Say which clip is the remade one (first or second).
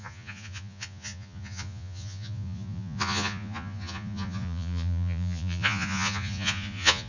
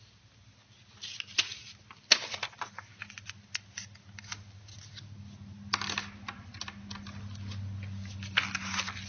first